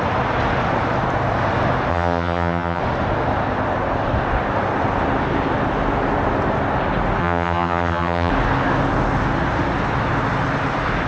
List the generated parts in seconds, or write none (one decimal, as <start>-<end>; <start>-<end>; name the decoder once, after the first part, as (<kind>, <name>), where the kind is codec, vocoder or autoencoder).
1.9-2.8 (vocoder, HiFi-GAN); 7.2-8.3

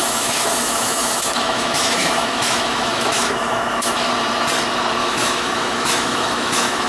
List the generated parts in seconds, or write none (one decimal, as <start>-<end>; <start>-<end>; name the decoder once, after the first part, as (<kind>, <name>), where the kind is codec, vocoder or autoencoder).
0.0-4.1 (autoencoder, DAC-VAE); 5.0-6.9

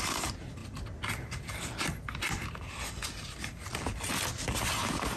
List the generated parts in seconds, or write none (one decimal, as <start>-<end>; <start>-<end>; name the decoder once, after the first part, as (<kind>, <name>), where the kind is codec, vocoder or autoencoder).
none